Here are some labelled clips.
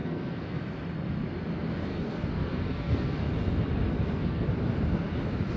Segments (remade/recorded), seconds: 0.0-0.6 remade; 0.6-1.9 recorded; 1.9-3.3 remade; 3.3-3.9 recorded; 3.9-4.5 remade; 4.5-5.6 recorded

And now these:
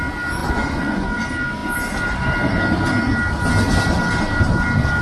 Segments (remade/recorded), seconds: 0.0-0.4 recorded; 0.4-1.2 remade; 1.2-5.0 recorded

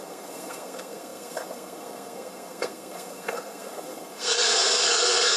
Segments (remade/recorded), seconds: 0.0-5.4 remade

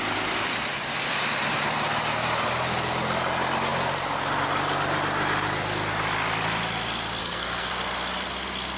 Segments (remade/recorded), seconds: 0.0-7.2 recorded; 7.2-7.7 remade; 7.7-8.8 recorded

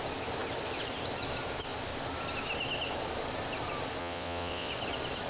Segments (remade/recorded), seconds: 0.0-4.0 recorded; 4.0-4.7 remade; 4.7-5.3 recorded

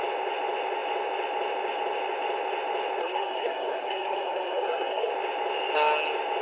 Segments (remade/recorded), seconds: 0.0-3.0 recorded; 3.0-5.1 remade; 5.1-6.4 recorded

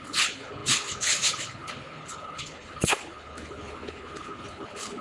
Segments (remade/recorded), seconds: 0.0-5.0 remade

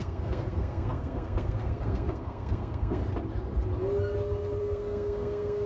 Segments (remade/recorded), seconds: 0.0-3.0 remade; 3.0-4.6 recorded; 4.6-5.7 remade